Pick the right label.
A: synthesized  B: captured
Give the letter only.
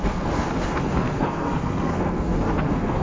A